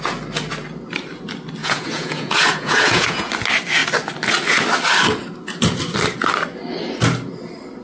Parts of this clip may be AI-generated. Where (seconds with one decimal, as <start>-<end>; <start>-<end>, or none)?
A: 1.6-3.3